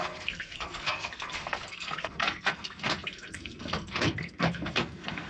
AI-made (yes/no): yes